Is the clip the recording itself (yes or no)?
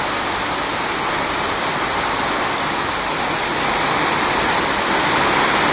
yes